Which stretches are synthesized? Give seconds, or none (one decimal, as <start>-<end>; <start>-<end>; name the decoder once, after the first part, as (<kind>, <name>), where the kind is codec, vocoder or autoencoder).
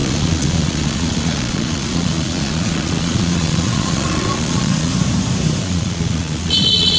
0.0-4.9 (vocoder, Vocos); 5.6-7.0